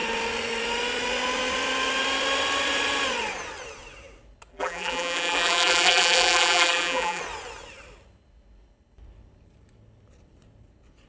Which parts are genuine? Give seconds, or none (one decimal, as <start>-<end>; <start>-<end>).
0.0-4.5; 7.2-11.1